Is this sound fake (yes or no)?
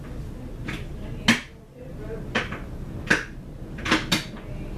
no